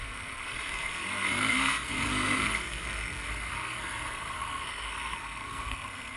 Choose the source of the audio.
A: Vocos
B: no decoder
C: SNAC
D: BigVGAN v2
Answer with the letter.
C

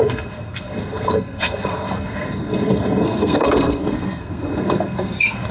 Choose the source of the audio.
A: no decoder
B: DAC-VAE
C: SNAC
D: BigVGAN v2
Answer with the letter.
C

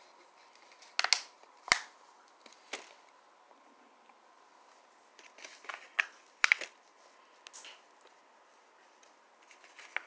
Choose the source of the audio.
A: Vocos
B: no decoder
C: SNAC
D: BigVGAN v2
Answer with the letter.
B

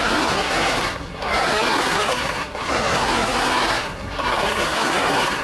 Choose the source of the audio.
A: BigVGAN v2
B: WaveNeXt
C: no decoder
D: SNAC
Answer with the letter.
D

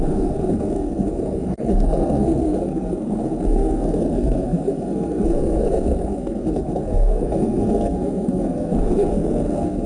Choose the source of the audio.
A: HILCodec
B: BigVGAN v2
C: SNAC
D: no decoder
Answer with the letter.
C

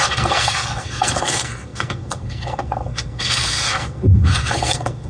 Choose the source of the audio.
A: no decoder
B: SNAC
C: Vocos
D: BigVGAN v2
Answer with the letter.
B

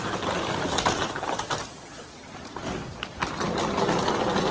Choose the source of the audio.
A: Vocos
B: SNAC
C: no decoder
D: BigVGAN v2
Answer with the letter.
C